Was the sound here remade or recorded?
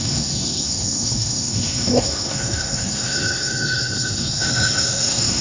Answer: remade